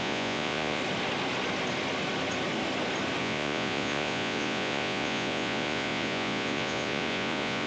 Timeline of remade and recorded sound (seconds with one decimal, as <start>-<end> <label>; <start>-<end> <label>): 0.0-0.8 remade; 0.8-3.2 recorded; 3.2-7.7 remade